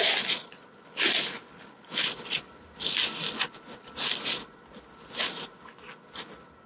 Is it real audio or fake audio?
real